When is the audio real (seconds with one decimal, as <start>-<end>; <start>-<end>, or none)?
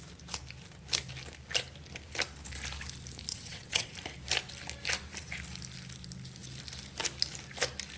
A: 0.0-3.3; 3.9-8.0